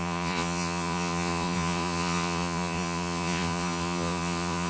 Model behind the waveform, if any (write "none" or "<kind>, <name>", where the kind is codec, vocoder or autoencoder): vocoder, Vocos